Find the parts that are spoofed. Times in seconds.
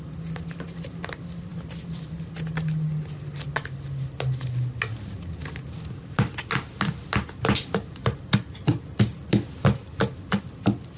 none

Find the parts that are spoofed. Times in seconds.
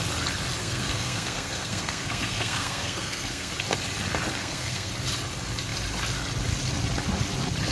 0.6-3.5; 4.4-4.9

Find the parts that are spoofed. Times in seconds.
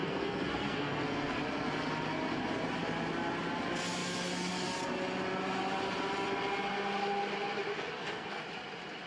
0.0-1.4; 7.7-8.4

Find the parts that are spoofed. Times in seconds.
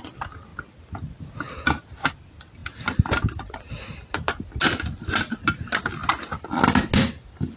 none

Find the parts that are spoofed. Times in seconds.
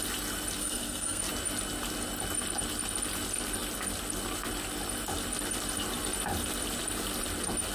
0.6-1.2